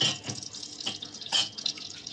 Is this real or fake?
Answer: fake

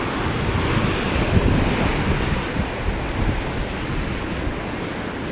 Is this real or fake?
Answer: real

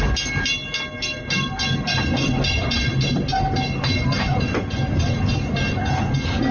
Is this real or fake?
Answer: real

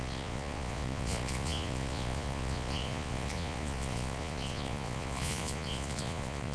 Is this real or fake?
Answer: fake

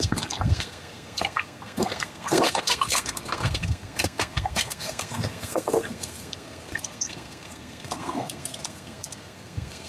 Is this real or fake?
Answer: fake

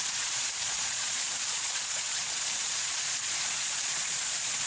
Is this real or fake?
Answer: fake